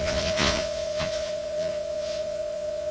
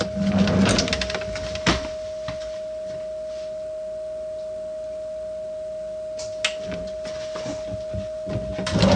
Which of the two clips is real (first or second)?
second